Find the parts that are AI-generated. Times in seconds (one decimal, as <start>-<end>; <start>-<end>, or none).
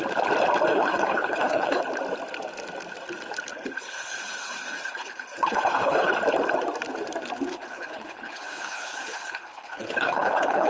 0.7-1.8; 3.5-6.1; 7.5-10.7